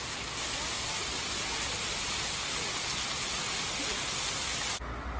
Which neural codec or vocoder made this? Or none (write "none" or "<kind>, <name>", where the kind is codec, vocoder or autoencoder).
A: none